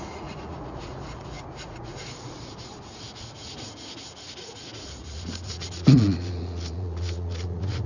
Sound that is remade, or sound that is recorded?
remade